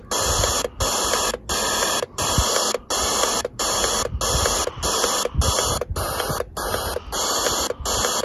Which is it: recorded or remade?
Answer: recorded